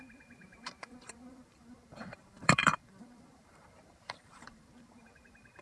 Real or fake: fake